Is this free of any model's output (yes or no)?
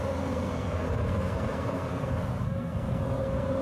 no